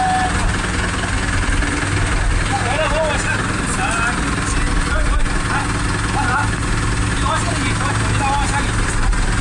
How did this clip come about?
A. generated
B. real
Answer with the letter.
B